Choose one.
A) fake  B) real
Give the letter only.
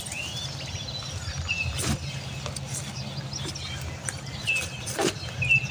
B